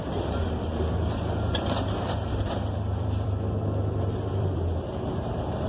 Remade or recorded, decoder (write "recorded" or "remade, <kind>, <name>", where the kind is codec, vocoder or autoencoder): remade, vocoder, BigVGAN v2